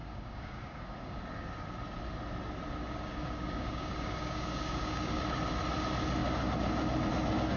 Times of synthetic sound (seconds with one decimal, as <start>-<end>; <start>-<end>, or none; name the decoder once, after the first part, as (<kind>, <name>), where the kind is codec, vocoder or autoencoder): 0.0-1.2 (codec, DAC); 2.8-5.2